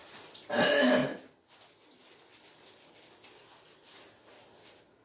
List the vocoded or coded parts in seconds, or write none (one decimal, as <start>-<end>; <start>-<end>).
none